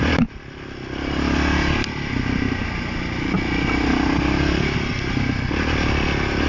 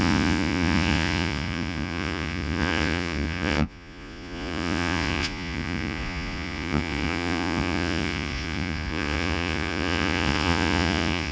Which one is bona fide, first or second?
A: first